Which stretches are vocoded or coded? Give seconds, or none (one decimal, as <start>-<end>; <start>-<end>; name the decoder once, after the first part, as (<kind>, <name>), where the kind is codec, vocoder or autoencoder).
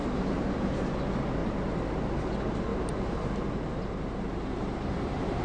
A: 1.4-2.2 (vocoder, BigVGAN v2); 2.7-5.4